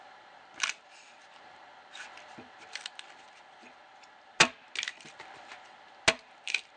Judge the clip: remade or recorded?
recorded